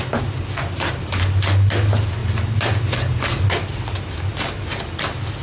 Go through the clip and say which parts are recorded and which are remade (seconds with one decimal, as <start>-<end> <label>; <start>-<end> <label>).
0.0-2.2 recorded; 2.2-4.3 remade; 4.3-5.4 recorded